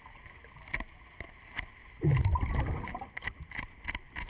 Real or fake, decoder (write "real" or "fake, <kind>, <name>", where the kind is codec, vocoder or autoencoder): real